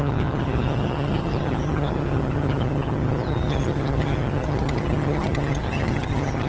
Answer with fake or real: fake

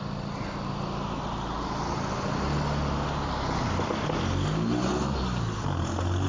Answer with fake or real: real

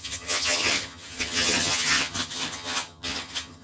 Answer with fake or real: fake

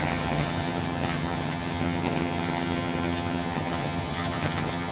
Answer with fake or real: fake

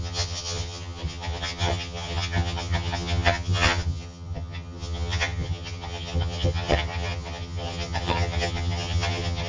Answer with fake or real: fake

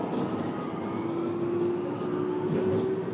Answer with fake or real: real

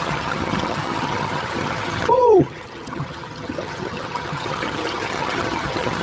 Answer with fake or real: fake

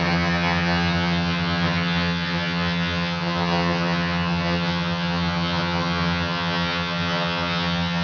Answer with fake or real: fake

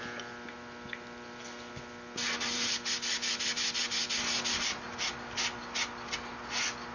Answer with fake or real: real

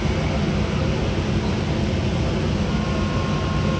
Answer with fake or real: real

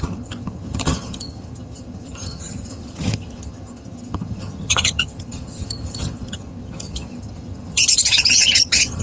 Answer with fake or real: fake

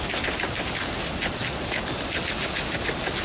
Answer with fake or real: real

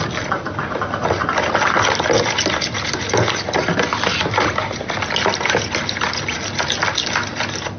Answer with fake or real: real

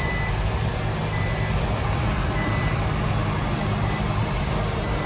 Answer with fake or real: real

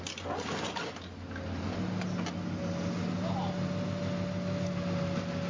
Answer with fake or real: real